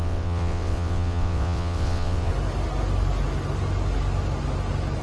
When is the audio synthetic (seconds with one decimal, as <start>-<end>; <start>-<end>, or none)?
0.0-2.3